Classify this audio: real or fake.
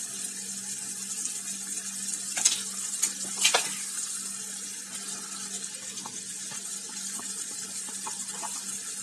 real